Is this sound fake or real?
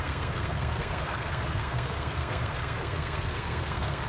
fake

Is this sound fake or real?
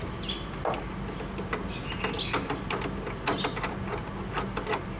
real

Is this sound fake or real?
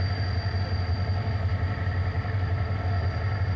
real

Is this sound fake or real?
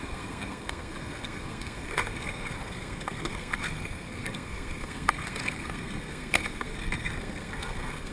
fake